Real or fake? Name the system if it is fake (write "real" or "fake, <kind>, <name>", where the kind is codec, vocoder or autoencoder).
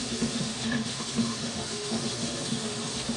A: fake, autoencoder, DAC-VAE